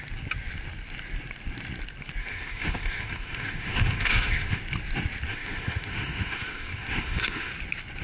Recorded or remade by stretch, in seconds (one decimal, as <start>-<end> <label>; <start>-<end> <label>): 0.0-2.2 recorded; 2.2-4.6 remade; 4.6-5.3 recorded; 5.3-7.5 remade; 7.5-8.0 recorded